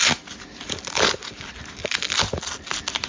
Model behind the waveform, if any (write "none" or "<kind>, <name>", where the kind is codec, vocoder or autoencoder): none